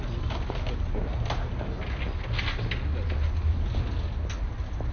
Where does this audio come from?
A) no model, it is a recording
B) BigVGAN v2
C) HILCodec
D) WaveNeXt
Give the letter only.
A